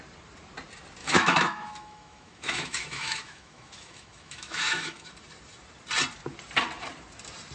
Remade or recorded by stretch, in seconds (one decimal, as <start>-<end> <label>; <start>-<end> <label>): 0.0-1.0 recorded; 1.0-5.1 remade; 5.1-7.5 recorded